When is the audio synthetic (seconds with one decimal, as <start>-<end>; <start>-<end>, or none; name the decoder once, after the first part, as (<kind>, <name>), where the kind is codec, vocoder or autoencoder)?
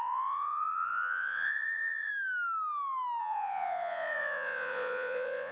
0.0-2.1 (vocoder, Vocos); 3.2-5.5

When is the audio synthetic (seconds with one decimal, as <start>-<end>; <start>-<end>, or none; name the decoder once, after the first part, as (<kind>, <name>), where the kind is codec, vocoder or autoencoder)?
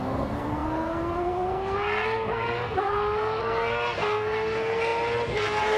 0.0-5.8 (codec, SNAC)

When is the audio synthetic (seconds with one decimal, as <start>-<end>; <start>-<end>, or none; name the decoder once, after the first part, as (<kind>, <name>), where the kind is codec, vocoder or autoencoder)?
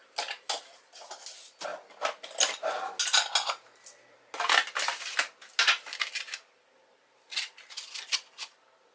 none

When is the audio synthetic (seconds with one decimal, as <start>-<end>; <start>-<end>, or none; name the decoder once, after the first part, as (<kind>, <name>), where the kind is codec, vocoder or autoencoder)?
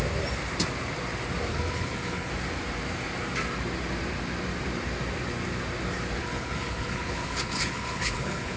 1.5-2.3 (codec, HILCodec); 6.2-8.6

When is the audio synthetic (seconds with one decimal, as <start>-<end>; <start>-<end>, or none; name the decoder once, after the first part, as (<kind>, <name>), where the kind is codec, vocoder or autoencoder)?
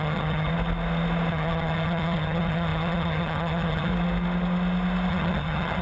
0.0-0.5 (vocoder, HiFi-GAN); 1.3-3.9; 5.1-5.8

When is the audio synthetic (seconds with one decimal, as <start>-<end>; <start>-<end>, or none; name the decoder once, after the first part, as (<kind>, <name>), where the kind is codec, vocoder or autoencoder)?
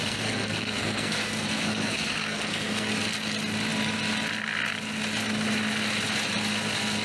0.0-2.9 (codec, SNAC)